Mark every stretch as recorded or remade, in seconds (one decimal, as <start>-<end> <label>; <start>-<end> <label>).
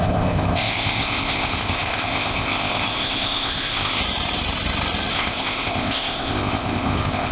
0.0-4.0 remade; 4.0-5.1 recorded; 5.1-7.3 remade